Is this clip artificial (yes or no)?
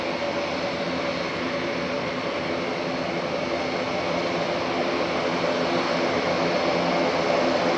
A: no